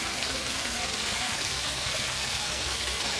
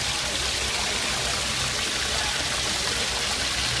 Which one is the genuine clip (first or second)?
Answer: second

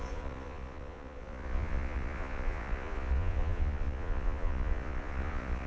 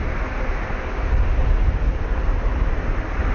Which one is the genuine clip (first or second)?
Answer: second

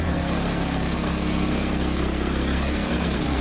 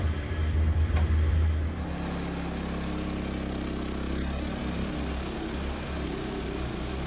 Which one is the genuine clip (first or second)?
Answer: second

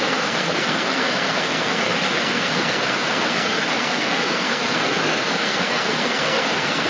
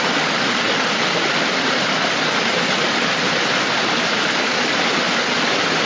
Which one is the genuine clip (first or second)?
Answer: second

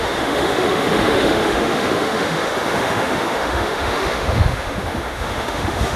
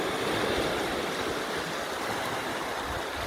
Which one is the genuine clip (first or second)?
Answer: second